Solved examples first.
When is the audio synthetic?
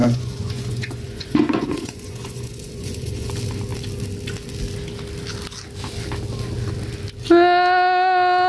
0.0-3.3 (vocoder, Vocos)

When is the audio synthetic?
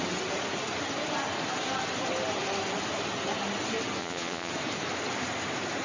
4.0-4.5 (vocoder, Vocos)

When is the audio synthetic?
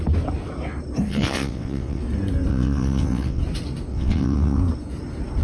1.1-2.0 (vocoder, WaveNeXt); 2.5-3.4; 3.9-4.6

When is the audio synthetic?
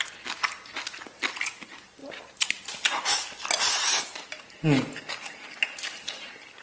none